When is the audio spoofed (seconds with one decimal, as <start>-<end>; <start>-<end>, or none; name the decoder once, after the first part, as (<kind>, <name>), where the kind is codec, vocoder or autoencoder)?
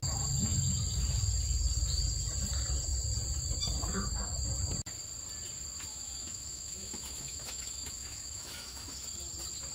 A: 5.9-9.1 (autoencoder, DAC-VAE)